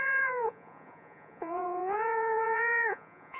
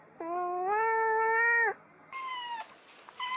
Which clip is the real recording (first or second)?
second